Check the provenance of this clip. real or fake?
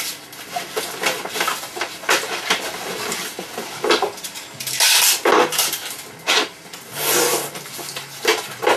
real